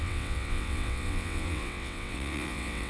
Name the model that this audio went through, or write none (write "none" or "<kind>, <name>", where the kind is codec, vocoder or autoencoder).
vocoder, WaveNeXt